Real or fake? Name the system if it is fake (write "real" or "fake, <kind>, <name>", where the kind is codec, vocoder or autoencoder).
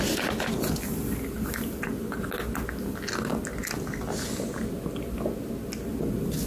real